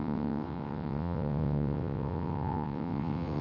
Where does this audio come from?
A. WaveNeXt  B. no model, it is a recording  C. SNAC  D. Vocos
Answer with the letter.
A